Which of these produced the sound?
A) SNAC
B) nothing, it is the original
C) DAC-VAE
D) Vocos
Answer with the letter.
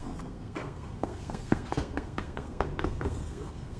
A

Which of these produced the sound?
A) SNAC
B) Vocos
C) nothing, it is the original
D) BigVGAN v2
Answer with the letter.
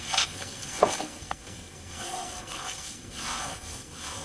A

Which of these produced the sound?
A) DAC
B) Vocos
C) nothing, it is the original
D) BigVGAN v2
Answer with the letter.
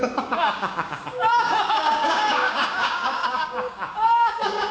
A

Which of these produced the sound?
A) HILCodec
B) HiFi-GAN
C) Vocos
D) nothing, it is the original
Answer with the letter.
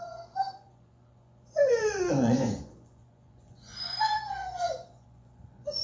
C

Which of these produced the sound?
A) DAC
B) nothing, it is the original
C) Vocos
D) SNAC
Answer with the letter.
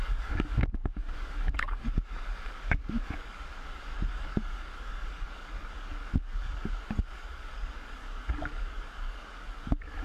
A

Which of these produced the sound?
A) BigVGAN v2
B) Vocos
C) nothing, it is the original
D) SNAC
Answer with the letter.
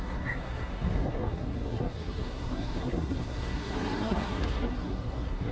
D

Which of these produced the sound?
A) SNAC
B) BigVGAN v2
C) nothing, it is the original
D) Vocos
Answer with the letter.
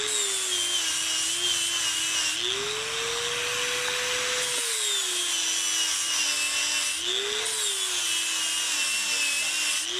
C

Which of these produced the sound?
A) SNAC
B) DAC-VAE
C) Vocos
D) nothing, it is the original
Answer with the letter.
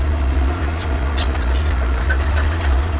C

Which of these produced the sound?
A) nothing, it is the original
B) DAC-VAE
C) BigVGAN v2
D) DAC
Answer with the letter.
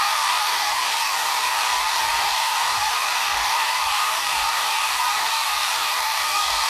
D